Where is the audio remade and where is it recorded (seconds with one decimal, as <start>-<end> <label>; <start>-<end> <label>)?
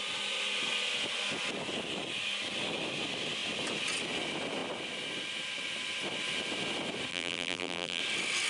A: 0.0-7.1 recorded; 7.1-8.0 remade; 8.0-8.5 recorded